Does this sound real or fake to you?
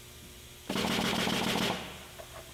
real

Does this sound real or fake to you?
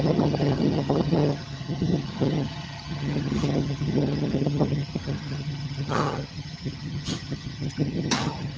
fake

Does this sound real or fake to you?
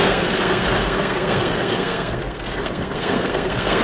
fake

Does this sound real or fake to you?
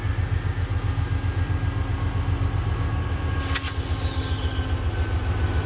real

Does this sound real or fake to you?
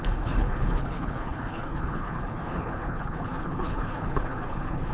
fake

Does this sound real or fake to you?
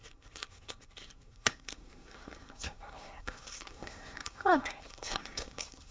fake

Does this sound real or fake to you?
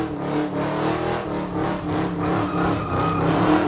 real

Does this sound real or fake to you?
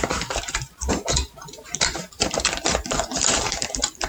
fake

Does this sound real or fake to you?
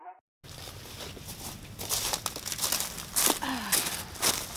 real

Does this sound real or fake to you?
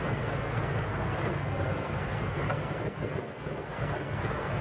fake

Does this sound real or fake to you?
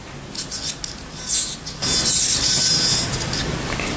real